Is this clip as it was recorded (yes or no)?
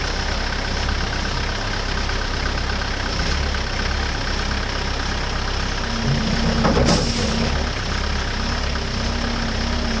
yes